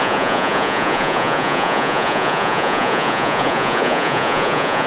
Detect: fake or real fake